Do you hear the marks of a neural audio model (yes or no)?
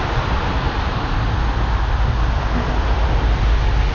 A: no